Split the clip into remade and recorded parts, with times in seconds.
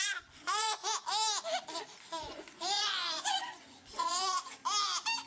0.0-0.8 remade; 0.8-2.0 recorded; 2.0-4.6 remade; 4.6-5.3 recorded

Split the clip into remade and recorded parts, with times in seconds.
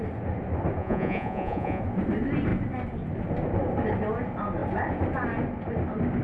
0.0-0.8 recorded; 0.8-1.8 remade; 1.8-6.2 recorded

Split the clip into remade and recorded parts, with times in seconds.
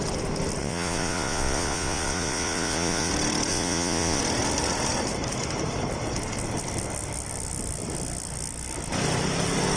0.0-0.6 recorded; 0.6-3.1 remade; 3.1-3.5 recorded; 3.5-4.2 remade; 4.2-9.8 recorded